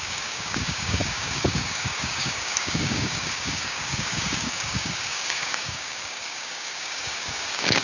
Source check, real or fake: fake